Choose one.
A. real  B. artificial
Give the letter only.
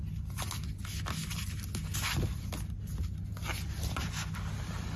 A